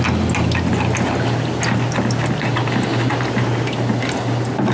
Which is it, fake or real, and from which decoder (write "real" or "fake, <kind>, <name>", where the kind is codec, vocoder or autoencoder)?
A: real